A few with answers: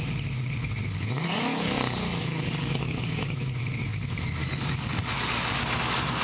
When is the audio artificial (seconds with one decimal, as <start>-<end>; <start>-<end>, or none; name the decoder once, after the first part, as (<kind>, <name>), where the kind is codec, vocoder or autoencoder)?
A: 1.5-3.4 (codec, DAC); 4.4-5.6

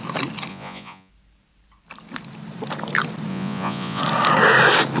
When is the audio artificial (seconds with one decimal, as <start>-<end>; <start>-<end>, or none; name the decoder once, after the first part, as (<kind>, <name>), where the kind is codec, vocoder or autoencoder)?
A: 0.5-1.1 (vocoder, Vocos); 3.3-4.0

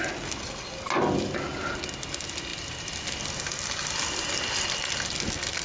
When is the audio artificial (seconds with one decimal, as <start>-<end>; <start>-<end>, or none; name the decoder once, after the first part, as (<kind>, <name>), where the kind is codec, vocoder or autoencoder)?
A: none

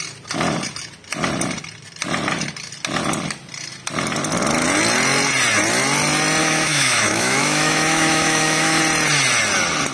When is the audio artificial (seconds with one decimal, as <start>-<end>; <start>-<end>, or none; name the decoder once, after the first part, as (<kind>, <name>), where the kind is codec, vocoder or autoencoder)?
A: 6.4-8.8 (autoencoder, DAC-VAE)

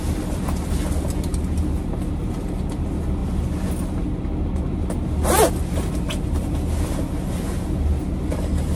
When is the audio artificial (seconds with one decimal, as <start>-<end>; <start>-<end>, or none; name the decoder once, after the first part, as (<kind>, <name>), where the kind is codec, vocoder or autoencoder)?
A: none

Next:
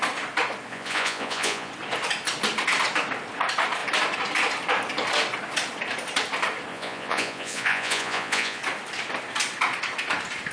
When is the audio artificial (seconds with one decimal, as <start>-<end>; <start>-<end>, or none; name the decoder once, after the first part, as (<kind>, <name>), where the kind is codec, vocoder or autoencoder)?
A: 0.7-1.7 (vocoder, Vocos); 6.7-8.6

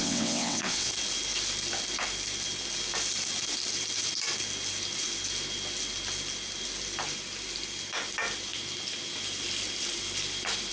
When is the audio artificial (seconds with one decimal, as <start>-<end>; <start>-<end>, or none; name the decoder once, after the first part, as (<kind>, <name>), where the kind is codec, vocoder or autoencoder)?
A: 0.0-0.9 (vocoder, WaveNeXt)